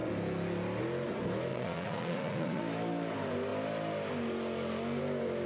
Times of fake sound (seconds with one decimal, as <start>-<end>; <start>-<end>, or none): 1.5-2.6

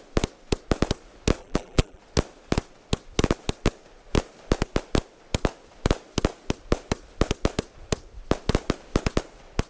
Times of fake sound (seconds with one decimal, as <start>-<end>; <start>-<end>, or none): 1.4-2.0

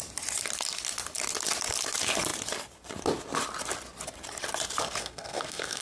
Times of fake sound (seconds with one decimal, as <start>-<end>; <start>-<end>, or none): 5.0-5.8